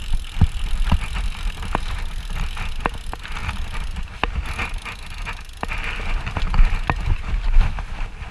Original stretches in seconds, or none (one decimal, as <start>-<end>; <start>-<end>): 0.0-8.3